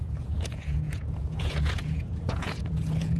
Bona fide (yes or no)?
no